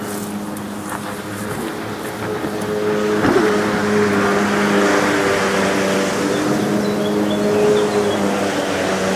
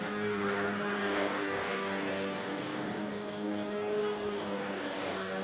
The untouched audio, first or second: first